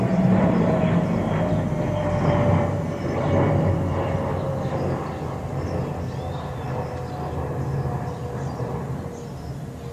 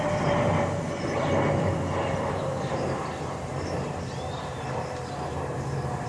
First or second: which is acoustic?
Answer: first